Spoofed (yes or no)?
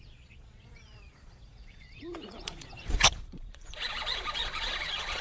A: yes